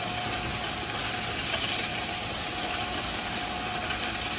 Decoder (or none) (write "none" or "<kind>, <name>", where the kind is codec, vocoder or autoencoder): none